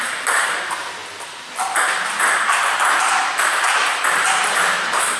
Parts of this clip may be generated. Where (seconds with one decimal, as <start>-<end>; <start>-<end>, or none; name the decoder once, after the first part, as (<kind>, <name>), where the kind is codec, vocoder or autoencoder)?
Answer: 0.0-1.0 (vocoder, BigVGAN v2); 4.1-5.2